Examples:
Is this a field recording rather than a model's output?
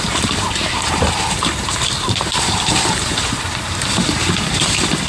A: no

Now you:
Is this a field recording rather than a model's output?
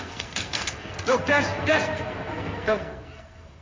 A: no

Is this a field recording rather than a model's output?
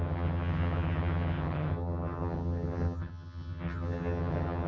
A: no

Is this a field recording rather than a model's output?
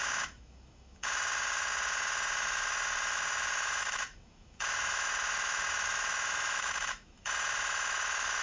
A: no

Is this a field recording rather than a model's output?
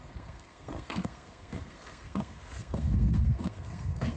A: no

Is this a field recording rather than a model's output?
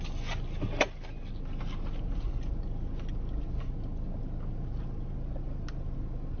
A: yes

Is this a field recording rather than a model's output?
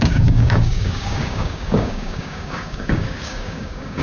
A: no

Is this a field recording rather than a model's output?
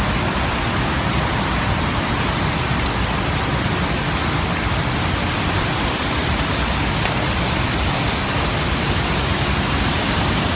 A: no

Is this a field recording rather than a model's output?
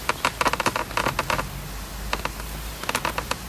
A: yes